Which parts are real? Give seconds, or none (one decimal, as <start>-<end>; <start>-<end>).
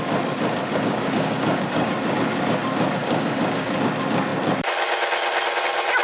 0.0-0.7; 1.9-3.0; 3.8-6.0